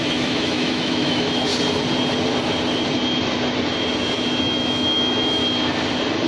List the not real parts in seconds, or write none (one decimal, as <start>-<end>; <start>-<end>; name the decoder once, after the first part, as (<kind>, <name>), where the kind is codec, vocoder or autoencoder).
0.0-1.5 (autoencoder, DAC-VAE); 4.4-5.4